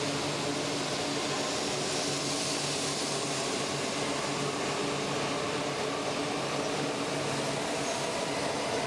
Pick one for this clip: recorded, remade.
recorded